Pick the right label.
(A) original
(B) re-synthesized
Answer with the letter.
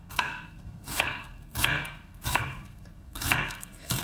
B